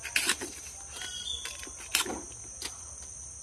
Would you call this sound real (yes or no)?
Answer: yes